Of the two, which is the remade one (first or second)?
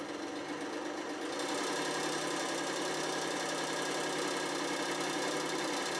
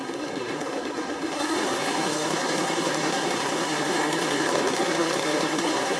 second